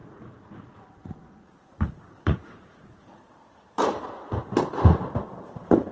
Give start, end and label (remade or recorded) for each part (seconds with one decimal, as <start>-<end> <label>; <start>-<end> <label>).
0.0-3.3 remade; 3.3-5.9 recorded

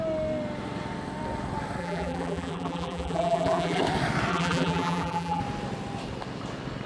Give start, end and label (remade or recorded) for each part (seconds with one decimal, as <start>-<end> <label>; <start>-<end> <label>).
0.0-1.8 recorded; 1.8-3.8 remade; 3.8-4.3 recorded; 4.3-5.4 remade; 5.4-6.9 recorded

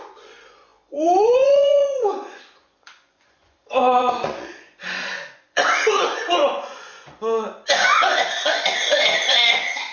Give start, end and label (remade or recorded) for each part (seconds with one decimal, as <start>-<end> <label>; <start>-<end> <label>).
0.0-9.9 remade